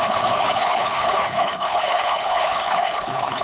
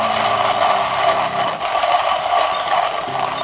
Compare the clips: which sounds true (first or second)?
second